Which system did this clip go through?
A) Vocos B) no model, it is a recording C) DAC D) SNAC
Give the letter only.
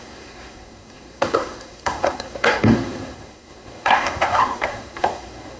D